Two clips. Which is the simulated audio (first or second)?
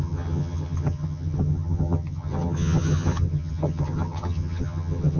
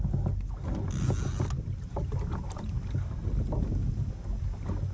first